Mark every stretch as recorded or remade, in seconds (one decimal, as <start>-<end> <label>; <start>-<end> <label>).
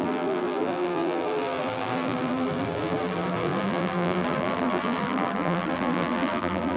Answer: 0.0-6.8 remade